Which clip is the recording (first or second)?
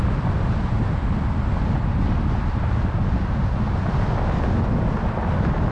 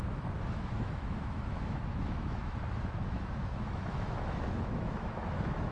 first